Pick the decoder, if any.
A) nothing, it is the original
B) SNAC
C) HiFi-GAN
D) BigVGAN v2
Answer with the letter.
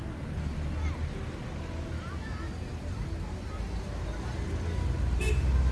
A